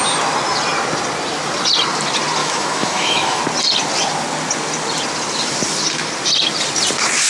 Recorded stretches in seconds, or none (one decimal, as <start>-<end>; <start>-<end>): 0.0-2.4; 3.4-7.3